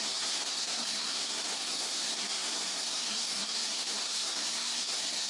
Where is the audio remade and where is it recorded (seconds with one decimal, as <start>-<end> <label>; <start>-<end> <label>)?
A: 0.0-5.3 remade